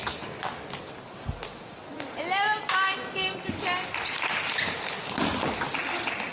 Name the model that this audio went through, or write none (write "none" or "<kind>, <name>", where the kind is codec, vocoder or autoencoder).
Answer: none